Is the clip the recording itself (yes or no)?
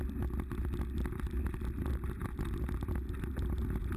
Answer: yes